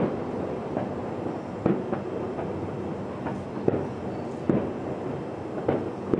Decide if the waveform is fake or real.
real